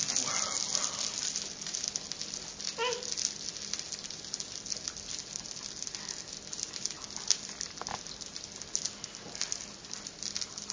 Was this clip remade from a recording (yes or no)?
no